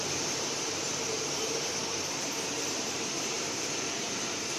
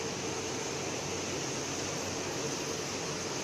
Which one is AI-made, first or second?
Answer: first